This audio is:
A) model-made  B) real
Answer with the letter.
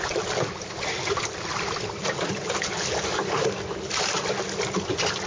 B